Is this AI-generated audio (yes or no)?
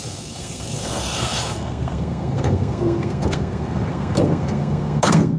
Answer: yes